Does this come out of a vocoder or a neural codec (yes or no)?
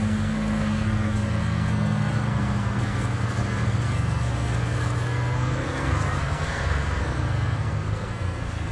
yes